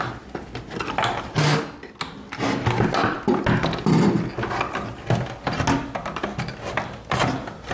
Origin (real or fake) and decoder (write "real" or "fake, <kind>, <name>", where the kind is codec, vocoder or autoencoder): real